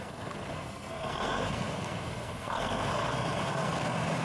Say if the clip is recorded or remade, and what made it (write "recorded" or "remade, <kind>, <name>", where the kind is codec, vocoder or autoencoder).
remade, codec, SNAC